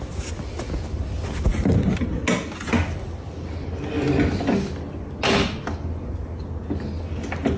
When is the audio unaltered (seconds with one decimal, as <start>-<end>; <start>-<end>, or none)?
0.0-7.6